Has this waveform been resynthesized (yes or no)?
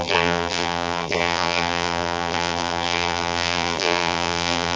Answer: yes